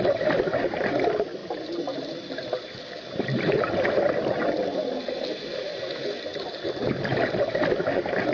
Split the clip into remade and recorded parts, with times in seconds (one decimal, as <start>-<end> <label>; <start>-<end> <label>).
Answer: 0.0-8.3 recorded